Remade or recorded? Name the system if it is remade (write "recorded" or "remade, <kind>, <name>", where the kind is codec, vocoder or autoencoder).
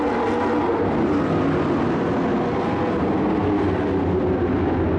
recorded